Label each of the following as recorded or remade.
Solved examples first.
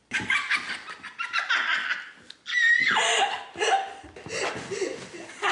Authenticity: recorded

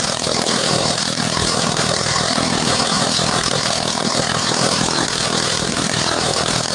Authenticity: remade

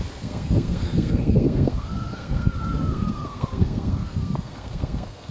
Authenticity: remade